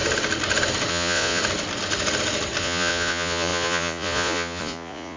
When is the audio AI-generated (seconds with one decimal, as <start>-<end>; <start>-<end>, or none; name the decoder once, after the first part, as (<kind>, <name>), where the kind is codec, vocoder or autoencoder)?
0.9-1.4 (vocoder, Vocos); 2.6-5.2